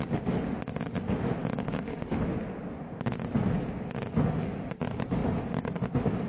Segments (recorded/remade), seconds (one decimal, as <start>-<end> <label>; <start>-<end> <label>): 0.0-1.4 recorded; 1.4-2.1 remade; 2.1-6.3 recorded